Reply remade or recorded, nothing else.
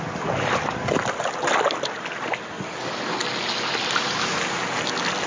recorded